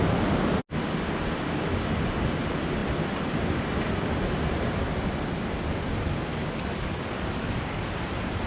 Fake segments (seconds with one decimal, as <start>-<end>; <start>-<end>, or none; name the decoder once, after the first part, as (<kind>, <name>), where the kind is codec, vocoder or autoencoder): 6.3-7.8 (codec, DAC)